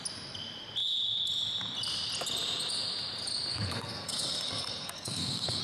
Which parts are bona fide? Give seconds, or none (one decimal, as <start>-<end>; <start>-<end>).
0.0-3.5